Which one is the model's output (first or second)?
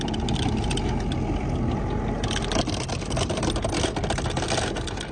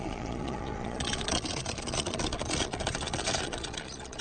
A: second